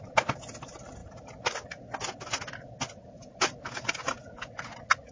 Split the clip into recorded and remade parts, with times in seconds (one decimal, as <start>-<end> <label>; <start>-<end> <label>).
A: 0.0-5.1 recorded